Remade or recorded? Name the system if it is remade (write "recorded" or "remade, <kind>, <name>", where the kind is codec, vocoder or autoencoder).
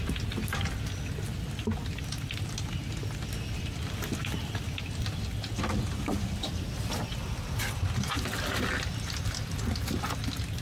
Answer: recorded